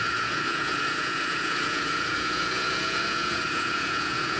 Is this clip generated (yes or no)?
yes